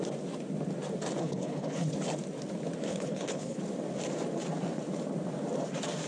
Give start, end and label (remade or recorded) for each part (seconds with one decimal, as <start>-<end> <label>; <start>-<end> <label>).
0.0-1.2 recorded; 1.2-1.9 remade; 1.9-2.9 recorded; 2.9-3.6 remade; 3.6-6.1 recorded